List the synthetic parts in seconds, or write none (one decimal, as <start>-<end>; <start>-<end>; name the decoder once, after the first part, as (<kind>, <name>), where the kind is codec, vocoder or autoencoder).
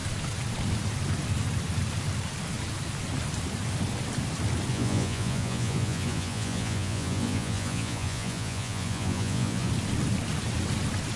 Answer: 4.7-9.7 (vocoder, Vocos)